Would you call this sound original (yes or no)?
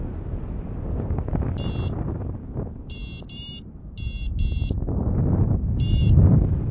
yes